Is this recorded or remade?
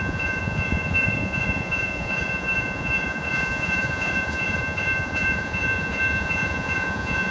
remade